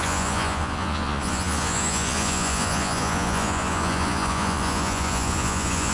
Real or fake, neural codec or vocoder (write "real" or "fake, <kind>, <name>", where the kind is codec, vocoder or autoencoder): fake, vocoder, Vocos